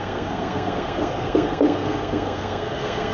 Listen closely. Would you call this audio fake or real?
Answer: fake